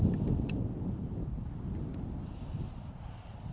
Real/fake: real